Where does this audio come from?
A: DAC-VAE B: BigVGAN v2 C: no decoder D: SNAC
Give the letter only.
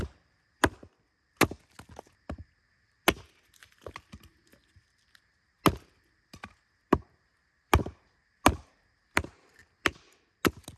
C